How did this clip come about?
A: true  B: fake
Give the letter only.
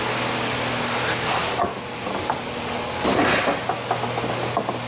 A